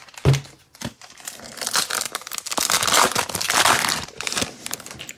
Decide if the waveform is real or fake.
real